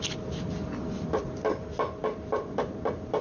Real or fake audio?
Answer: fake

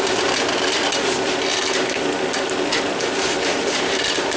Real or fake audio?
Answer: real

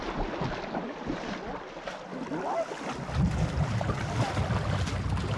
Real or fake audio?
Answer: real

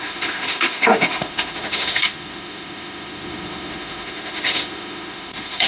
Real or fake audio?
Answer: fake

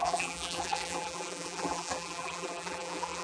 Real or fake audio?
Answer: fake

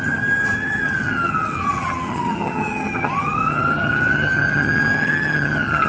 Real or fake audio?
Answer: fake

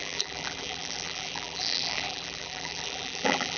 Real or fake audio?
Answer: fake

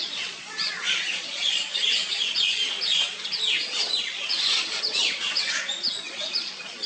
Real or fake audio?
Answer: fake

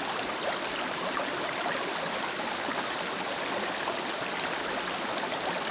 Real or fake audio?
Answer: real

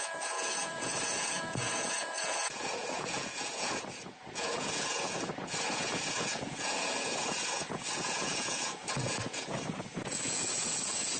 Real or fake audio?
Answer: fake